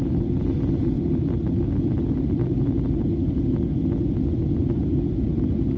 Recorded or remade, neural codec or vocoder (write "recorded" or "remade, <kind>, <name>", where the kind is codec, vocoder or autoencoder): recorded